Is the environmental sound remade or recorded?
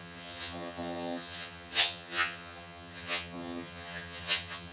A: remade